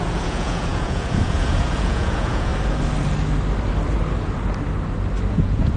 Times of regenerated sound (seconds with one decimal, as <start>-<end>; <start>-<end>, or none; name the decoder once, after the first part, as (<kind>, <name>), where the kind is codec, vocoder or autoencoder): 0.0-2.5 (vocoder, Vocos); 5.3-5.8